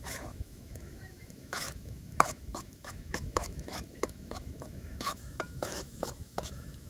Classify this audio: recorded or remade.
remade